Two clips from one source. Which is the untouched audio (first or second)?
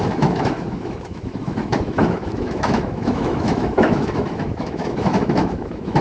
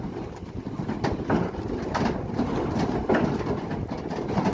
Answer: second